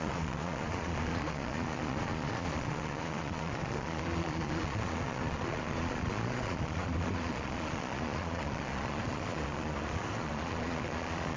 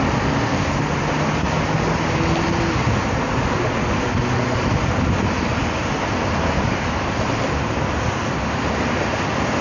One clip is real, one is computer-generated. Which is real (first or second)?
second